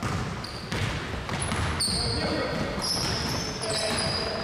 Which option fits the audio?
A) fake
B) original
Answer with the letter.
B